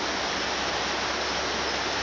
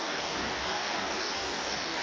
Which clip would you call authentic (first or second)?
first